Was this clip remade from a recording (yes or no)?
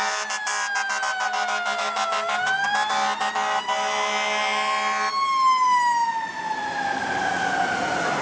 no